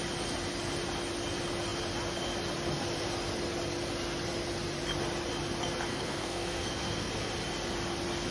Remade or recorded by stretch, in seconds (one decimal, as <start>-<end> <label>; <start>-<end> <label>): 0.0-5.9 recorded; 5.9-7.1 remade; 7.1-8.3 recorded